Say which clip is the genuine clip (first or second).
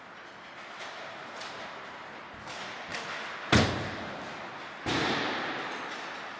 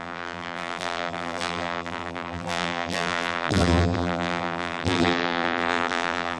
first